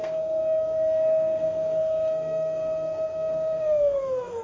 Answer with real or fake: fake